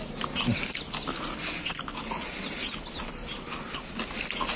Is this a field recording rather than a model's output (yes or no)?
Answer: yes